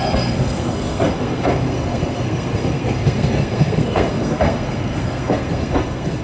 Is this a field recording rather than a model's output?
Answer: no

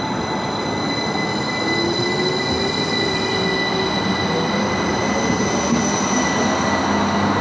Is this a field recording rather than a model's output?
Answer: yes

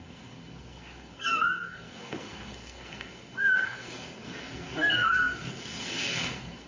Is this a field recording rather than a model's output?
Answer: no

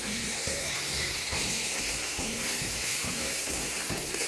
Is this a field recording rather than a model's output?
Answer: no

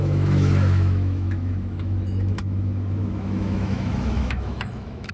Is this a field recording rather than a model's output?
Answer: no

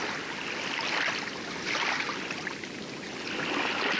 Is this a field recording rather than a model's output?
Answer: yes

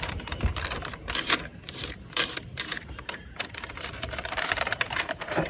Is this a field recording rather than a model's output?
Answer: no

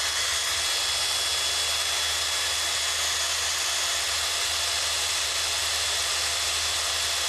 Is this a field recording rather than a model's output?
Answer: yes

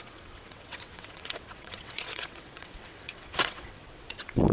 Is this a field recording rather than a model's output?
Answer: no